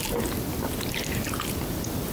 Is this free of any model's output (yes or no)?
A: yes